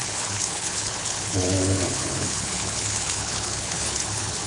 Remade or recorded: remade